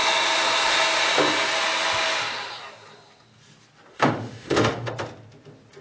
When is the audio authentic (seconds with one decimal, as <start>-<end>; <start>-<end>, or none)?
0.0-3.9; 4.9-5.8